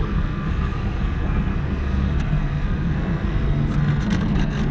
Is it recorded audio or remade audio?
remade